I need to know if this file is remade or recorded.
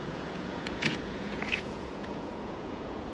remade